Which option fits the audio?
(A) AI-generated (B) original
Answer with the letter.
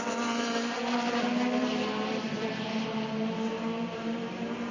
A